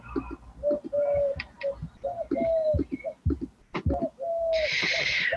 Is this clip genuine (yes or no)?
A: yes